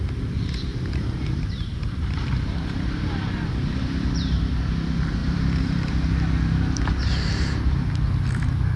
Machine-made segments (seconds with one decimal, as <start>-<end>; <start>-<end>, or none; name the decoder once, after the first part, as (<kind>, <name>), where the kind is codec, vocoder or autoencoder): 0.7-4.6 (vocoder, BigVGAN v2); 5.2-5.9